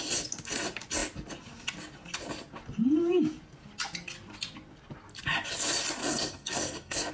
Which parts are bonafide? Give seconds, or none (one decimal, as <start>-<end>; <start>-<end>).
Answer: 0.0-6.0